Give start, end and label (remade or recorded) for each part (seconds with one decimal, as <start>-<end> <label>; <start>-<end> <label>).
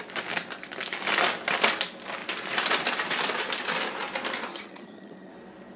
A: 0.0-4.5 recorded; 4.5-5.3 remade; 5.3-5.8 recorded